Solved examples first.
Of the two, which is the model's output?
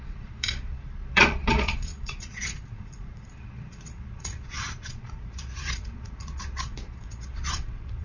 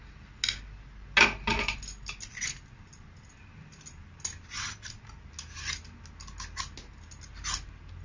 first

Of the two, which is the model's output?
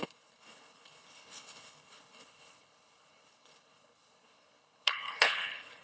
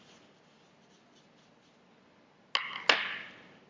first